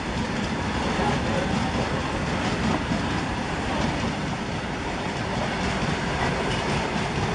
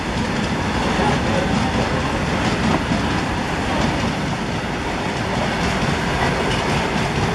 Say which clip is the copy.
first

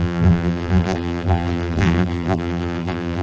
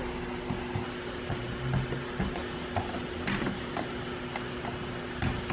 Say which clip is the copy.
first